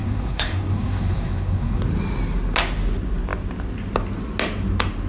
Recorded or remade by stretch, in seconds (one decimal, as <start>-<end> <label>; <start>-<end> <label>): 0.0-1.8 remade; 1.8-5.1 recorded